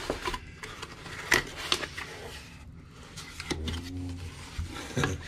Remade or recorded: recorded